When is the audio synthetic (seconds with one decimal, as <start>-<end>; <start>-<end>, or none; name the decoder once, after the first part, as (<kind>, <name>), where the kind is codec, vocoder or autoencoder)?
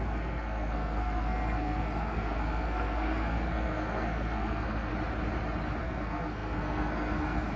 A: 0.0-4.9 (codec, SNAC); 5.8-7.6